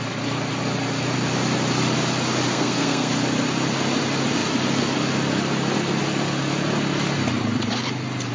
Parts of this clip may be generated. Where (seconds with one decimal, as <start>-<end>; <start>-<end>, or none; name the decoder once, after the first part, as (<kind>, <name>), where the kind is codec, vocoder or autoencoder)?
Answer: 2.5-3.1 (codec, SNAC)